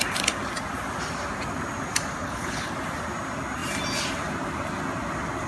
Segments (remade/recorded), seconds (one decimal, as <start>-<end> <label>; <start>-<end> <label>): 0.0-2.2 recorded; 2.2-2.7 remade; 2.7-5.5 recorded